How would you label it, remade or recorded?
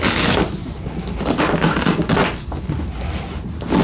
recorded